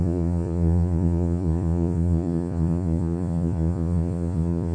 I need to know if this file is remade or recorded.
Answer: remade